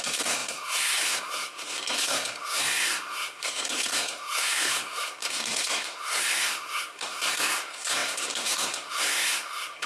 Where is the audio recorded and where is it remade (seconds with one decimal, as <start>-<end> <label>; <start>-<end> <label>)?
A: 0.0-9.9 remade